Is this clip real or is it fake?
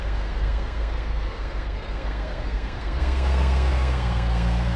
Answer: fake